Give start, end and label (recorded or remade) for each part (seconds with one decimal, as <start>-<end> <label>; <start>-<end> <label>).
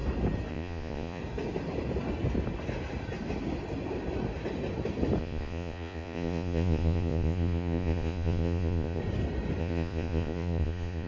0.0-0.5 recorded; 0.5-1.2 remade; 1.2-5.2 recorded; 5.2-9.0 remade; 9.0-9.6 recorded; 9.6-11.1 remade